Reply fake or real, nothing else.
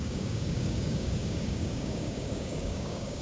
fake